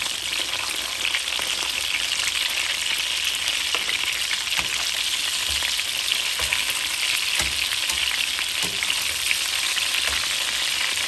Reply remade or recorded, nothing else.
recorded